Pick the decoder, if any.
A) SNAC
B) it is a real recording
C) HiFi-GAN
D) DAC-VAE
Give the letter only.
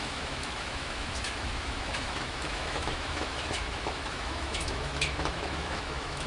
D